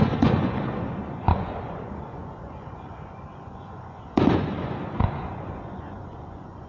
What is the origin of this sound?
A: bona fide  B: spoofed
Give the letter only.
B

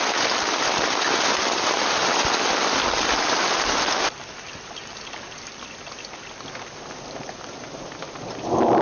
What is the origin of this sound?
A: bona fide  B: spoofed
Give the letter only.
A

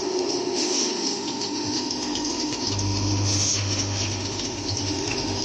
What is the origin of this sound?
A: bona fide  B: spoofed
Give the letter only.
B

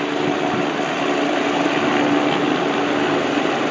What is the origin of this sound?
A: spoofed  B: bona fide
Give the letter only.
B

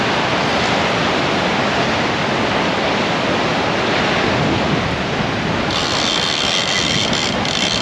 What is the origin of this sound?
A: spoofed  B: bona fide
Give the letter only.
B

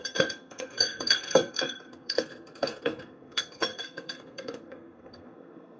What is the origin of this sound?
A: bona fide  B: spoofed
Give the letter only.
B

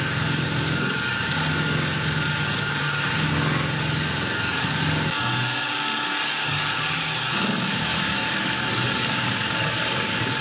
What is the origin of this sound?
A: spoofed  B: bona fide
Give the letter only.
A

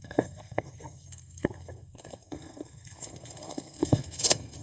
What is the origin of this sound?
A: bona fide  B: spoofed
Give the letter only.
B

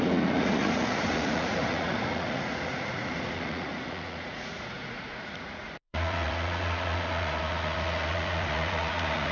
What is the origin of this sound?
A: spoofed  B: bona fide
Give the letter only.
A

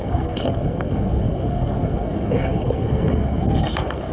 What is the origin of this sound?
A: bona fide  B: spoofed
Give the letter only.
B